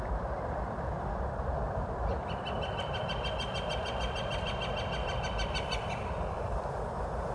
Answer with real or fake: fake